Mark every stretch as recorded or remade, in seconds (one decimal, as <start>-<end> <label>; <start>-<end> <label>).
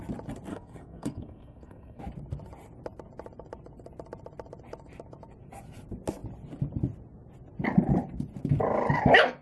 0.0-0.5 recorded; 0.5-2.0 remade; 2.0-9.4 recorded